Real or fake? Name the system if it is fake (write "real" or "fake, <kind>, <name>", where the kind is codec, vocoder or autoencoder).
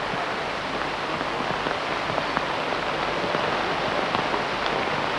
real